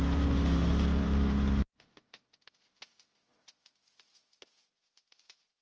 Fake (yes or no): no